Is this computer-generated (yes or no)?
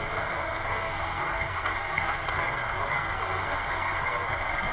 yes